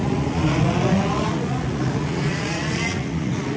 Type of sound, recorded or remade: remade